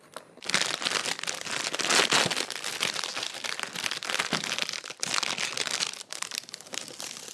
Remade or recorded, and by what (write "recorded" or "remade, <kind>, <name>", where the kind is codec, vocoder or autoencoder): recorded